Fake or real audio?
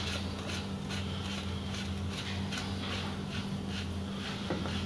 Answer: real